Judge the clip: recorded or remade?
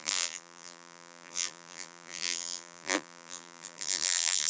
remade